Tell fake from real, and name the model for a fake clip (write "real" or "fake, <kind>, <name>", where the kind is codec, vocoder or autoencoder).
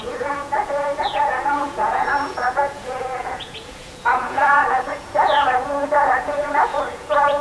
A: fake, vocoder, Vocos